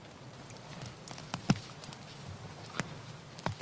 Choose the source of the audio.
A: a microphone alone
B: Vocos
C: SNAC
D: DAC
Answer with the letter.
A